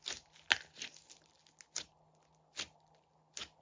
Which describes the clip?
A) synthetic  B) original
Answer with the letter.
B